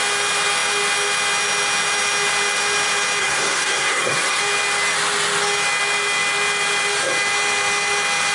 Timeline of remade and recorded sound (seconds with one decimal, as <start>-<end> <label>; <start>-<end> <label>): 0.0-3.2 recorded; 3.2-4.4 remade; 4.4-8.3 recorded